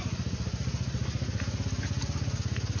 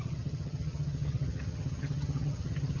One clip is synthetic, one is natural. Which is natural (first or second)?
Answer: first